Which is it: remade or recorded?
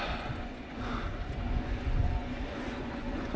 remade